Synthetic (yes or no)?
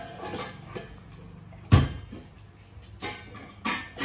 no